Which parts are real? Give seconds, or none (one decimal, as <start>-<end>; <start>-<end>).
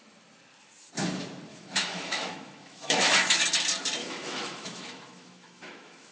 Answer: 0.0-1.5; 3.4-4.0